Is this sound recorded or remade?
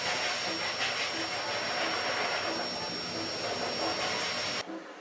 recorded